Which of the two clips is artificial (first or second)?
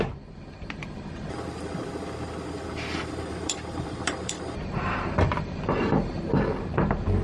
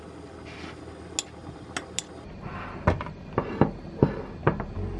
first